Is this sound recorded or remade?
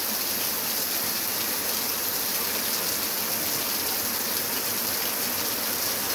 recorded